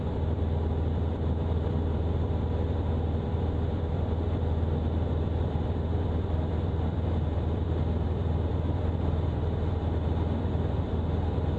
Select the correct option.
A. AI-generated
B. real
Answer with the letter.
A